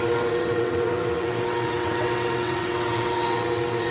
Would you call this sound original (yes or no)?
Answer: no